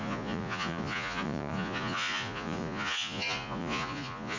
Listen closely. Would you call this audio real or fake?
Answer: fake